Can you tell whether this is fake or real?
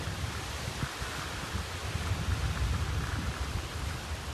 real